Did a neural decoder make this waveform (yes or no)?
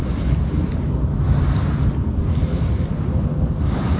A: no